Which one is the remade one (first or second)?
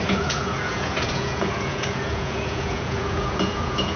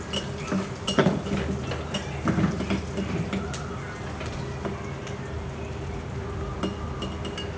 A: first